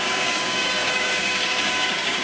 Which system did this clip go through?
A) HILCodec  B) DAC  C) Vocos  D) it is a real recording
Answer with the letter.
B